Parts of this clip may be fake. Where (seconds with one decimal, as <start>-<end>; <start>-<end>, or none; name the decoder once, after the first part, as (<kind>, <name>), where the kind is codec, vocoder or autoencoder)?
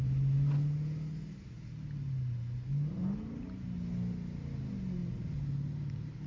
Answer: none